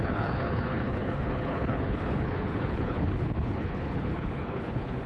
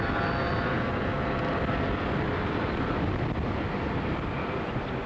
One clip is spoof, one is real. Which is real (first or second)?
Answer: second